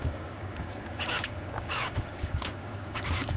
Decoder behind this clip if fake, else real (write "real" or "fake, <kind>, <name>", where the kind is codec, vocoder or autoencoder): fake, codec, DAC